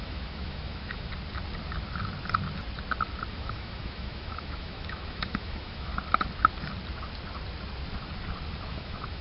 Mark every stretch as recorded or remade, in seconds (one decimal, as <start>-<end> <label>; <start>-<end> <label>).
0.0-1.1 remade; 1.1-3.3 recorded; 3.3-5.9 remade; 5.9-8.7 recorded; 8.7-9.2 remade